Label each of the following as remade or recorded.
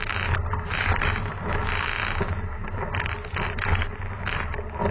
recorded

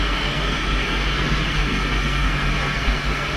remade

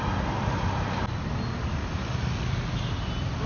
recorded